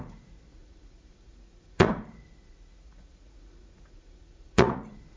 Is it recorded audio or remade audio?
remade